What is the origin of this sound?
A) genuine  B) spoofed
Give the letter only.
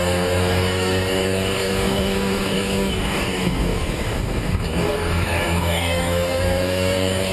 B